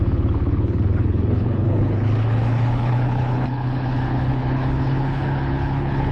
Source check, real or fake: fake